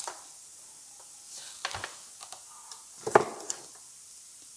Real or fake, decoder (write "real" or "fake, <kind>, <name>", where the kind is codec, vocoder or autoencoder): real